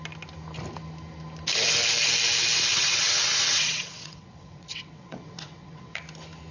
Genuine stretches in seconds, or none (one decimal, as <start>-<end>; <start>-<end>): 0.0-2.7; 6.0-6.5